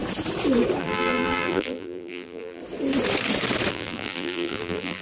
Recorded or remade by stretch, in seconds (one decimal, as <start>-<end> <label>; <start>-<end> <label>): 0.0-0.8 recorded; 0.8-2.6 remade; 2.6-3.7 recorded; 3.7-5.0 remade